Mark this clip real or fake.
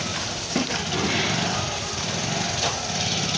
real